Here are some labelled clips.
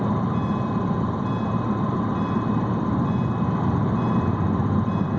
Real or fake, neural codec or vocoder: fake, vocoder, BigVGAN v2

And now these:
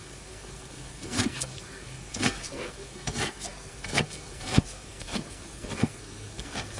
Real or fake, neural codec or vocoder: fake, codec, SNAC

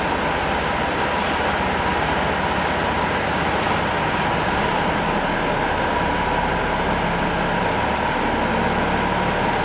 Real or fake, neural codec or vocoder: real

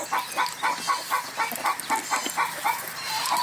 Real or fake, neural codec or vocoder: real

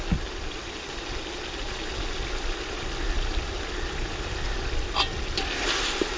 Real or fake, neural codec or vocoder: real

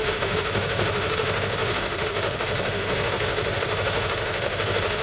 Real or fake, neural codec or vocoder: fake, autoencoder, DAC-VAE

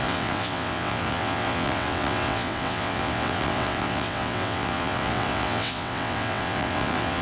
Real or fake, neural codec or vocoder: fake, vocoder, WaveNeXt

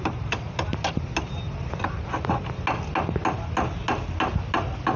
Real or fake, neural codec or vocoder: real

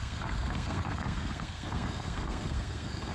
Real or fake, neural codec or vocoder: fake, codec, SNAC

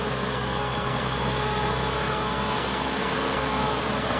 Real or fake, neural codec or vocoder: fake, codec, SNAC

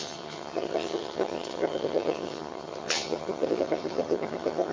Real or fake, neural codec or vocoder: fake, vocoder, HiFi-GAN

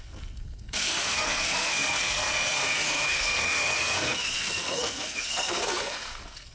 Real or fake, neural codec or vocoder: fake, codec, SNAC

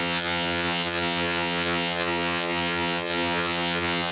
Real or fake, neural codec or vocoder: fake, vocoder, HiFi-GAN